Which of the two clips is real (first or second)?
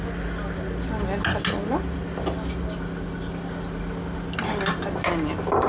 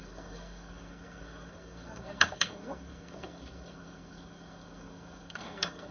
first